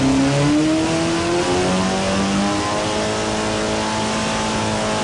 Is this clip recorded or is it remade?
recorded